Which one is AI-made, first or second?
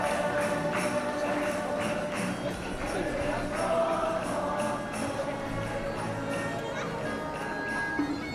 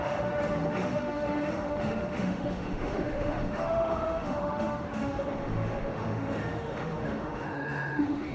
second